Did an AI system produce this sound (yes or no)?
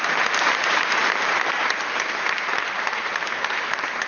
yes